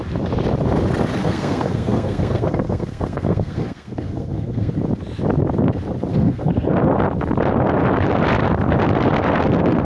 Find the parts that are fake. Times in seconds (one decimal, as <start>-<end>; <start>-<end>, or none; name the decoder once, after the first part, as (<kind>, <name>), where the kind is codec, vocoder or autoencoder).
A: 1.2-4.7 (codec, SNAC); 6.1-6.9